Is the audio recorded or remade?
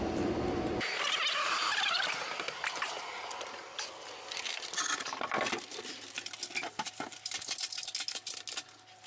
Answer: recorded